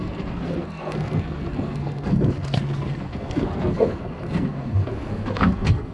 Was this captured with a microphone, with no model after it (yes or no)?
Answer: no